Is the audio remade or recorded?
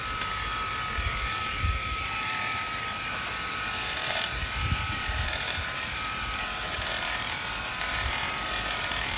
remade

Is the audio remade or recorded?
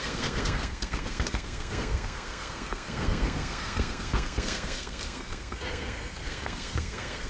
remade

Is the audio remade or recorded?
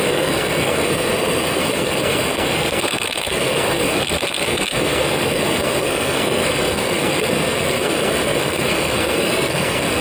remade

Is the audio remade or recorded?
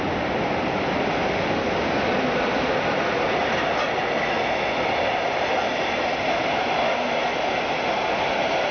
recorded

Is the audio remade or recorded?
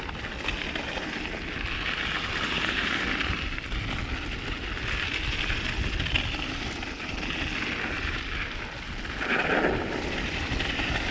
recorded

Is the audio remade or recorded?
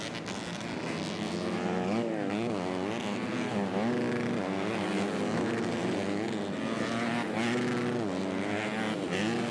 recorded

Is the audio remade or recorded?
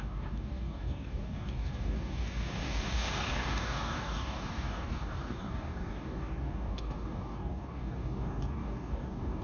remade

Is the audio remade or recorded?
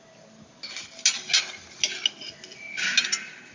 recorded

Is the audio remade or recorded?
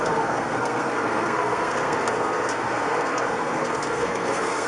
remade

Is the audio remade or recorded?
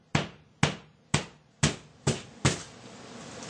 recorded